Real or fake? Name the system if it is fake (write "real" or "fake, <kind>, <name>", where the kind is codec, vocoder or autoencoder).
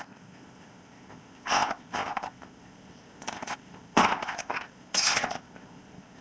fake, codec, ZipCodec